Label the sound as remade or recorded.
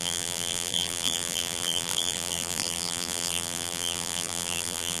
remade